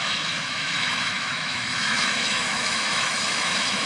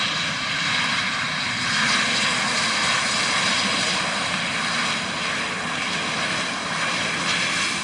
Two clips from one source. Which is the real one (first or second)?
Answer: second